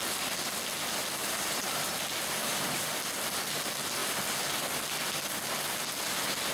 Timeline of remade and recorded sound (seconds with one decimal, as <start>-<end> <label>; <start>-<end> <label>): 0.0-1.2 recorded; 1.2-2.0 remade; 2.0-2.4 recorded; 2.4-2.9 remade; 2.9-6.5 recorded